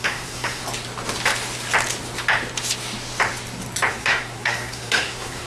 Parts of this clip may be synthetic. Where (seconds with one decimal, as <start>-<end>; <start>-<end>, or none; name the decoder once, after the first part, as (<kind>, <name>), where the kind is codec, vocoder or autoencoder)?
0.0-0.6 (codec, SNAC); 3.9-5.5